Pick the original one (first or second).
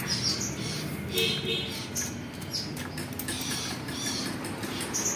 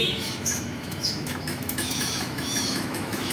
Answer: first